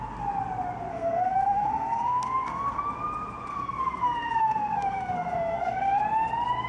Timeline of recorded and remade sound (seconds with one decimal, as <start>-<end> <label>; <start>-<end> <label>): 0.0-0.9 recorded; 0.9-2.8 remade; 2.8-3.5 recorded; 3.5-6.0 remade; 6.0-6.7 recorded

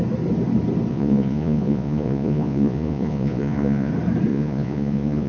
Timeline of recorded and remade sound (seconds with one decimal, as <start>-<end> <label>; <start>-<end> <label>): 0.0-0.9 recorded; 0.9-3.9 remade; 3.9-4.3 recorded; 4.3-5.3 remade

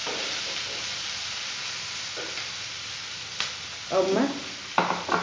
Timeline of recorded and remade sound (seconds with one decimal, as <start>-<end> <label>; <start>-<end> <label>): 0.0-5.2 recorded

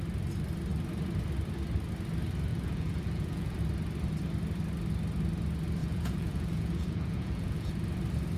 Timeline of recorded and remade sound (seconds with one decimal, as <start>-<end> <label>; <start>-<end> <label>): 0.0-2.5 recorded; 2.5-3.6 remade; 3.6-5.8 recorded; 5.8-7.7 remade; 7.7-8.4 recorded